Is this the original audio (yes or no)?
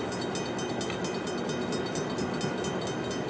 yes